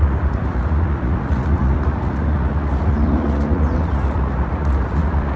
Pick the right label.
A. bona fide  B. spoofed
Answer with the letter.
B